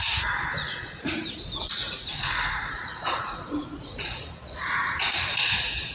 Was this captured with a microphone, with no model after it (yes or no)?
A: no